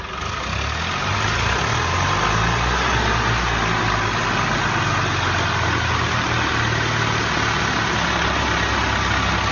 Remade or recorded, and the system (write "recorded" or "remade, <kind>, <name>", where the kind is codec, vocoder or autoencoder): recorded